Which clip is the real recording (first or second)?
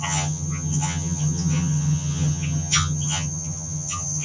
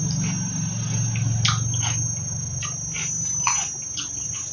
second